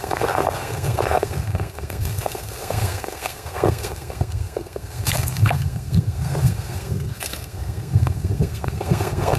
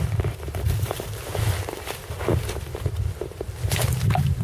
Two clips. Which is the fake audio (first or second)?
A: first